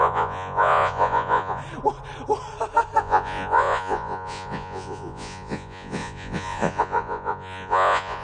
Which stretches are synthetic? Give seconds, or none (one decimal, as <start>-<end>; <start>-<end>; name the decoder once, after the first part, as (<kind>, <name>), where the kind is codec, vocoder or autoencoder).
0.0-1.6 (vocoder, Vocos); 3.0-8.2